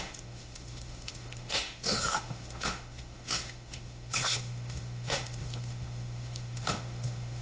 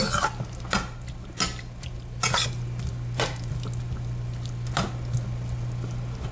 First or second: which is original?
second